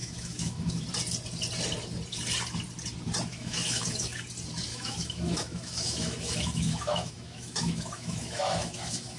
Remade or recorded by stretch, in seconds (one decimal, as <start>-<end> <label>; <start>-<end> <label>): 0.0-0.8 remade; 0.8-3.3 recorded; 3.3-4.2 remade; 4.2-4.7 recorded; 4.7-9.2 remade